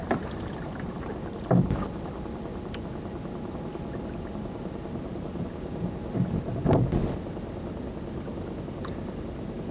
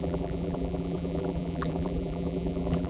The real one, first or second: first